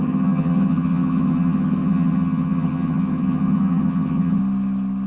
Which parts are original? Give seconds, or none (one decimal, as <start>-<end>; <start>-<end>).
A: 4.4-5.1